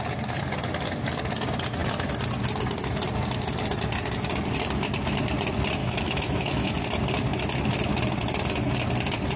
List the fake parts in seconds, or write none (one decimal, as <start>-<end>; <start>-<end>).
5.8-6.7